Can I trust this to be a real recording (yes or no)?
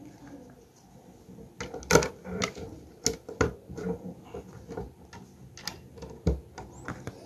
yes